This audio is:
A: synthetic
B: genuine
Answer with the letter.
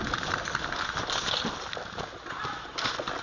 B